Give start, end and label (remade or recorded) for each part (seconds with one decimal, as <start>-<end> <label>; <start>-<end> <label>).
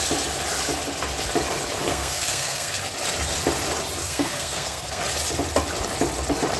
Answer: 0.0-1.9 recorded; 1.9-2.8 remade; 2.8-4.0 recorded; 4.0-5.0 remade; 5.0-6.6 recorded